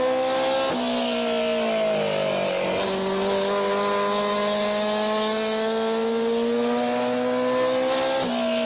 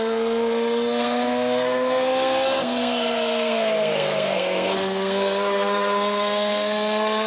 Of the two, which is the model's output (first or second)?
second